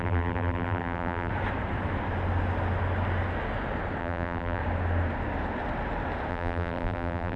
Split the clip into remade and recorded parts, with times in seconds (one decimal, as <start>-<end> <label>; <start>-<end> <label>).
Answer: 0.0-1.3 remade; 1.3-4.0 recorded; 4.0-4.6 remade; 4.6-6.3 recorded; 6.3-7.4 remade